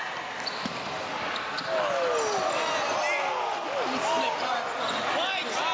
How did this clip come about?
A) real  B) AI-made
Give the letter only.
A